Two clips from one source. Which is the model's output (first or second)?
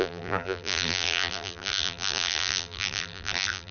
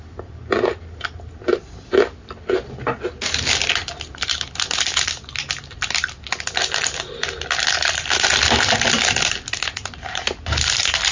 first